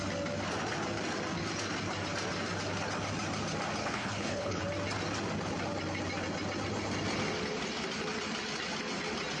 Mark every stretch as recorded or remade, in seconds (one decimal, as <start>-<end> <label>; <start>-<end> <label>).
0.0-3.8 recorded; 3.8-4.6 remade; 4.6-9.4 recorded